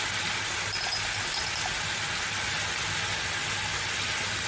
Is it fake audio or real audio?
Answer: real